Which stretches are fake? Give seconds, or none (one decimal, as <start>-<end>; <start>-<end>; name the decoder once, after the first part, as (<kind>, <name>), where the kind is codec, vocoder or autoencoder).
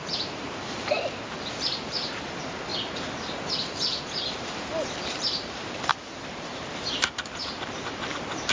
0.0-2.7 (vocoder, BigVGAN v2); 3.5-8.5